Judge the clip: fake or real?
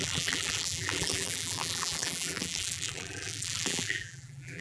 fake